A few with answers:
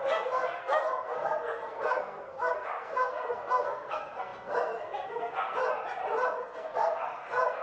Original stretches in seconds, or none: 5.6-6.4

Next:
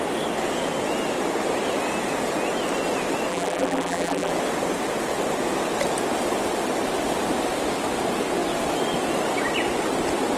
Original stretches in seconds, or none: 0.0-3.3; 4.3-10.4